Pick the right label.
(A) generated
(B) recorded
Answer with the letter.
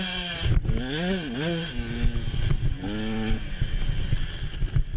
B